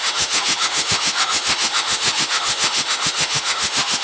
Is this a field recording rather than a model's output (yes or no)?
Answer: no